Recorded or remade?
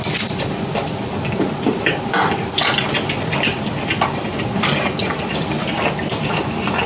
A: recorded